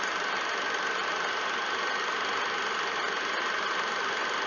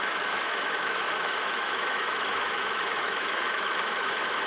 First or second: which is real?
first